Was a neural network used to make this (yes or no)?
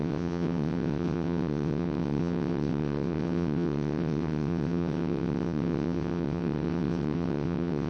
yes